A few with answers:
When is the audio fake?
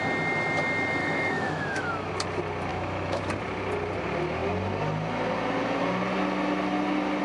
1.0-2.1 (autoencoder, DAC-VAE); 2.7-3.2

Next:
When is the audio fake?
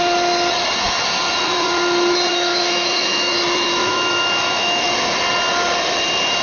2.3-3.3 (autoencoder, DAC-VAE); 3.8-4.9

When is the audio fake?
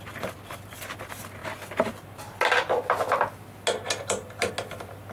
none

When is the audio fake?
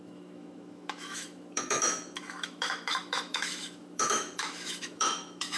0.0-5.6 (autoencoder, DAC-VAE)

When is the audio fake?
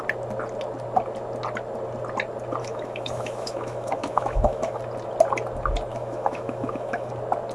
2.6-4.8 (autoencoder, DAC-VAE); 5.9-7.1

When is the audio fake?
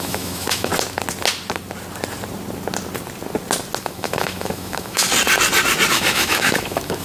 0.0-0.7 (autoencoder, DAC-VAE); 3.8-5.1; 5.9-7.0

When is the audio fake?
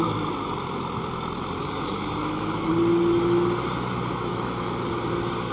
1.6-2.7 (autoencoder, DAC-VAE); 4.3-4.9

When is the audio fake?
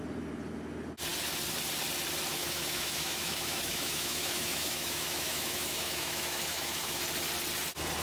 2.3-7.0 (autoencoder, DAC-VAE)